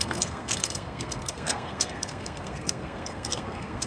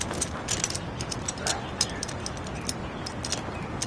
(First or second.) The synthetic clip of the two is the first